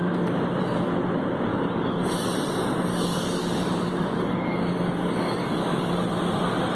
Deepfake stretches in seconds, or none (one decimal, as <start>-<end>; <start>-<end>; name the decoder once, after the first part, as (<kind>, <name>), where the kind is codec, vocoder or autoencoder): 1.5-2.3 (codec, DAC); 2.9-5.9